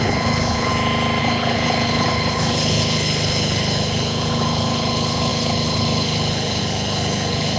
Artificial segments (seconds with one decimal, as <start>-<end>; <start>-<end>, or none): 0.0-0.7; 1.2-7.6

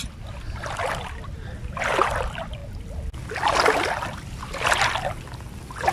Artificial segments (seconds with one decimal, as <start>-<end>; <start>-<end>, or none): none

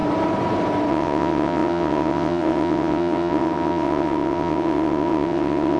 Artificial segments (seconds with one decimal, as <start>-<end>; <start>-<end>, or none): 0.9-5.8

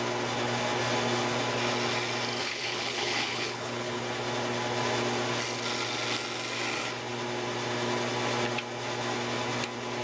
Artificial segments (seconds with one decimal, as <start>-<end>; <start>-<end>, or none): 2.4-4.0